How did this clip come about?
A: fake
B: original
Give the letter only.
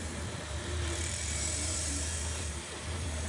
A